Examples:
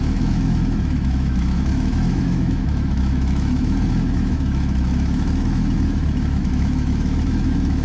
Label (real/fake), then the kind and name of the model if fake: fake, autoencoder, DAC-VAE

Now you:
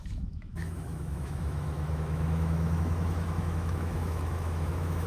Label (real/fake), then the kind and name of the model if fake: fake, autoencoder, DAC-VAE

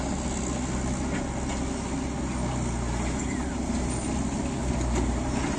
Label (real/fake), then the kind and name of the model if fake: real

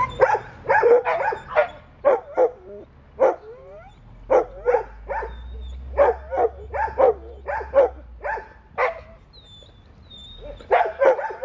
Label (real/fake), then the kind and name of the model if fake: real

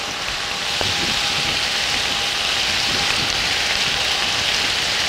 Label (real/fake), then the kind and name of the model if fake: real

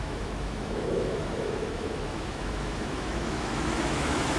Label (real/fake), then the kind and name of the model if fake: fake, autoencoder, DAC-VAE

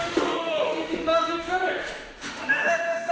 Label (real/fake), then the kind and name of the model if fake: fake, autoencoder, DAC-VAE